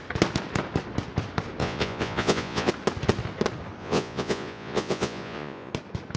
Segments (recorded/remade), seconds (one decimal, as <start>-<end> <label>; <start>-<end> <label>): 0.0-1.6 recorded; 1.6-2.7 remade; 2.7-3.8 recorded; 3.8-5.7 remade; 5.7-6.2 recorded